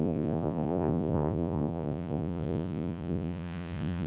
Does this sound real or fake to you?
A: fake